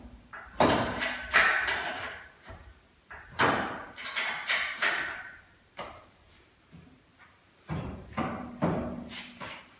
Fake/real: fake